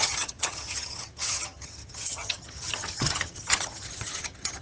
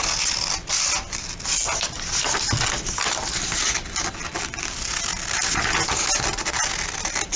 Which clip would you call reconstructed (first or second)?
first